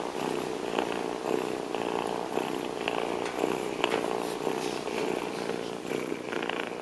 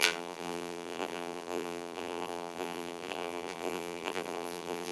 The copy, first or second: second